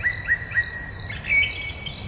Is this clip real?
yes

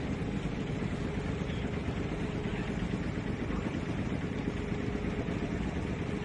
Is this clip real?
yes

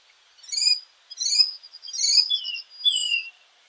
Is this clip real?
yes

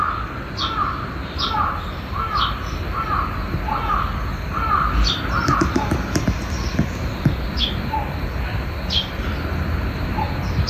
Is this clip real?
yes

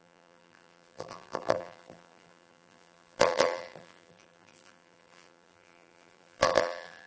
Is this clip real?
no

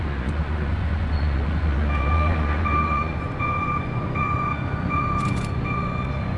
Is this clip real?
no